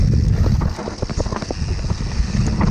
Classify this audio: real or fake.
real